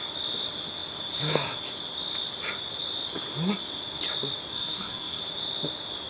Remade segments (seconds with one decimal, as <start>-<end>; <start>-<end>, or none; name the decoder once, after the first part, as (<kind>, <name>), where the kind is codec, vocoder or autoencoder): 4.5-5.2 (codec, SNAC)